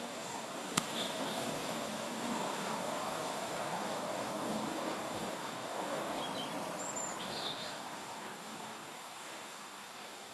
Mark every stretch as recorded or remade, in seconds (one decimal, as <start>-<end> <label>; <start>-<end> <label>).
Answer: 0.0-6.2 remade; 6.2-7.2 recorded; 7.2-10.3 remade